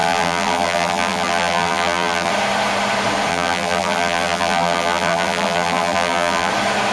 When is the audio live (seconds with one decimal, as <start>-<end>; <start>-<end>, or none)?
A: 2.3-3.3; 6.5-6.9